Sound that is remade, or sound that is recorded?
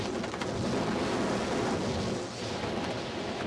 recorded